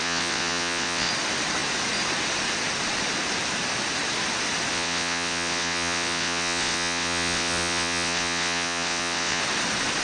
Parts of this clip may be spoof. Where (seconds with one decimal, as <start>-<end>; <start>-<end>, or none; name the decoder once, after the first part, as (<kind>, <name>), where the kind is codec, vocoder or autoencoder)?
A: 0.0-1.1 (vocoder, WaveNeXt); 4.7-9.4